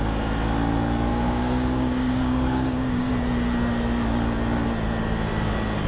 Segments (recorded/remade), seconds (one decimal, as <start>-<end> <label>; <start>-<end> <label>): 0.0-1.1 recorded; 1.1-3.1 remade; 3.1-5.9 recorded

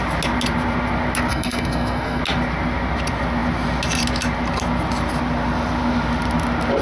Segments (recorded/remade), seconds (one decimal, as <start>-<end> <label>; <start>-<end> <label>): 0.0-1.3 recorded; 1.3-2.2 remade; 2.2-6.8 recorded

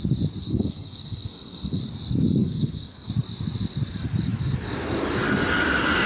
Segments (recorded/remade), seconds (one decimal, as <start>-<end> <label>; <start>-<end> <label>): 0.0-0.4 recorded; 0.4-1.8 remade; 1.8-2.4 recorded; 2.4-3.1 remade; 3.1-6.1 recorded

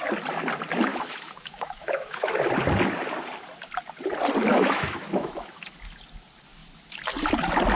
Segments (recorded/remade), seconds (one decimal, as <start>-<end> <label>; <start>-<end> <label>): 0.0-0.9 recorded; 0.9-2.3 remade; 2.3-4.5 recorded; 4.5-5.7 remade; 5.7-7.8 recorded

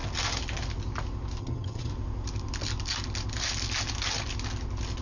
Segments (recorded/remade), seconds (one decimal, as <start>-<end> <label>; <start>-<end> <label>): 0.0-1.4 recorded; 1.4-1.9 remade; 1.9-5.0 recorded

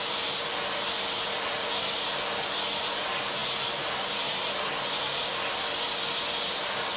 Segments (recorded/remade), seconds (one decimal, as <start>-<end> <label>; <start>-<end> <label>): 0.0-7.0 recorded

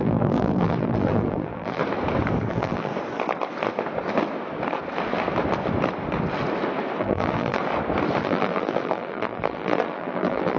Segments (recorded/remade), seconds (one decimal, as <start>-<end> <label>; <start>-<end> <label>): 0.0-1.8 remade; 1.8-2.5 recorded; 2.5-2.9 remade; 2.9-7.0 recorded; 7.0-7.6 remade; 7.6-8.2 recorded; 8.2-10.6 remade

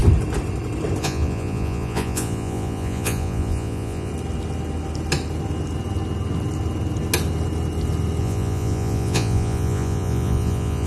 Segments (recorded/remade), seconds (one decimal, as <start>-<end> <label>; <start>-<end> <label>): 0.0-1.0 recorded; 1.0-4.1 remade; 4.1-8.2 recorded; 8.2-10.9 remade